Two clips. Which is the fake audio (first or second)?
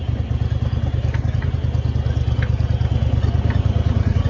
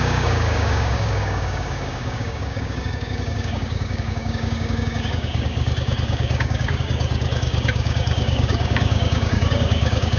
second